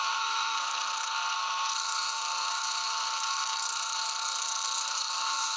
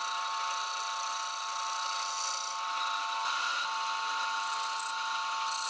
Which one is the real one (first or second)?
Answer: second